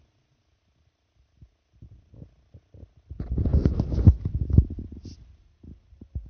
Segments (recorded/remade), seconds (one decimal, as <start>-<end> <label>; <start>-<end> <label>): 0.0-6.3 recorded